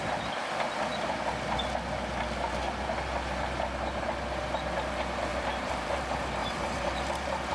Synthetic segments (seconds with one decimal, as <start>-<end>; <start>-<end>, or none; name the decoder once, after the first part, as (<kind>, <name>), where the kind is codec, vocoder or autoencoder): 5.3-6.0 (vocoder, BigVGAN v2); 6.4-7.5